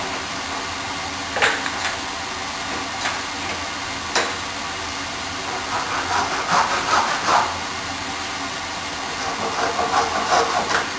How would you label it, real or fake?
fake